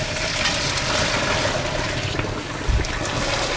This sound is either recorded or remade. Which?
recorded